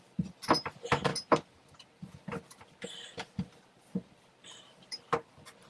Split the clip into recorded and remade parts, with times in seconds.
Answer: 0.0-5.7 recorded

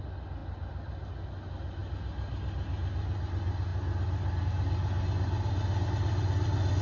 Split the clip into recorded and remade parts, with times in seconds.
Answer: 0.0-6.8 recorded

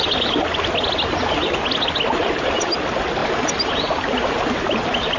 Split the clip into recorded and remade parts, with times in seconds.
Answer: 0.0-5.2 recorded

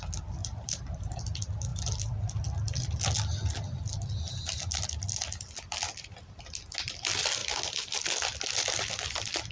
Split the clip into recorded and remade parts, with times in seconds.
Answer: 0.0-0.4 recorded; 0.4-1.2 remade; 1.2-9.5 recorded

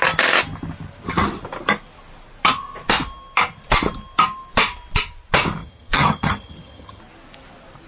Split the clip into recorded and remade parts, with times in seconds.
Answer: 0.0-5.6 recorded; 5.6-7.0 remade; 7.0-7.9 recorded

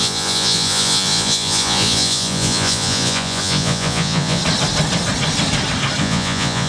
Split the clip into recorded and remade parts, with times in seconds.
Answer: 0.0-4.4 remade; 4.4-6.0 recorded; 6.0-6.7 remade

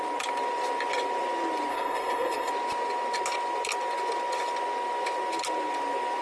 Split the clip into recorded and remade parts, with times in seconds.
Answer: 0.0-1.7 recorded; 1.7-2.5 remade; 2.5-6.2 recorded

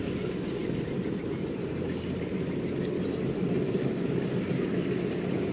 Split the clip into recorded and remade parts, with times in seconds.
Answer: 0.0-5.5 recorded